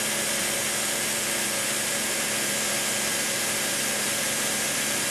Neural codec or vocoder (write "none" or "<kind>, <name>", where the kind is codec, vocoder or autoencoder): vocoder, BigVGAN v2